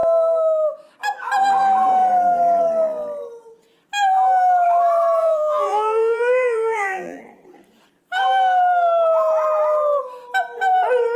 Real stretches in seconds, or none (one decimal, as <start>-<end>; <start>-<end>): 0.0-5.2; 7.2-11.2